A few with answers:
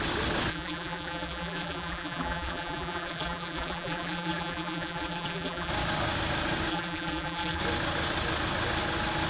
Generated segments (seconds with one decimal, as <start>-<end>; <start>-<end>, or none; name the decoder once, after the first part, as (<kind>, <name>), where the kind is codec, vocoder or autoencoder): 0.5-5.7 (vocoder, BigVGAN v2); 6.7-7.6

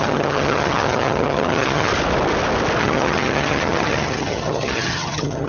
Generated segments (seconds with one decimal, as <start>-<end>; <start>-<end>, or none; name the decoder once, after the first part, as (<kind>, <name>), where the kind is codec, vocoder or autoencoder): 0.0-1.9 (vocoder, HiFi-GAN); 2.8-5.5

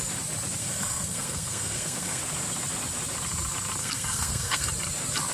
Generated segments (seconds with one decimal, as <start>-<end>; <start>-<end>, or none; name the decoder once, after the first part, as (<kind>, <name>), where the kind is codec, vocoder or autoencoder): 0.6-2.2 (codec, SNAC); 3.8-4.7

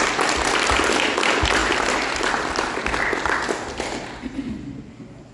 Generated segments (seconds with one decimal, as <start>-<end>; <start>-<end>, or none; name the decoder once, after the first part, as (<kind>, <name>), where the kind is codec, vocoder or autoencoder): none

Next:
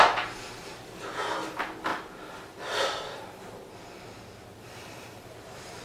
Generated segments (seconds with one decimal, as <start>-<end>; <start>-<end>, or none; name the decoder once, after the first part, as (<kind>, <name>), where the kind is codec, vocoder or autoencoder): 1.9-5.8 (vocoder, BigVGAN v2)

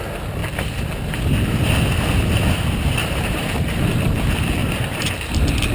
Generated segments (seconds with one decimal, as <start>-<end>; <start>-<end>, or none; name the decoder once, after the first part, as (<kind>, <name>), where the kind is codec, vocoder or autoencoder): 3.0-3.8 (vocoder, BigVGAN v2); 4.6-5.1